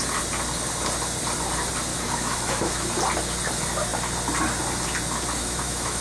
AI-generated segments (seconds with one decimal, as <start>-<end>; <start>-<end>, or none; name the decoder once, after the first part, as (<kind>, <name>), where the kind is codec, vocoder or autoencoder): 1.9-2.9 (autoencoder, DAC-VAE); 5.4-6.0